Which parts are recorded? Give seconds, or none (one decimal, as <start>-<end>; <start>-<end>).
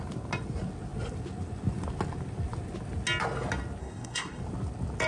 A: 0.0-3.8; 4.4-5.1